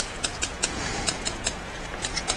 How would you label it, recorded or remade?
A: remade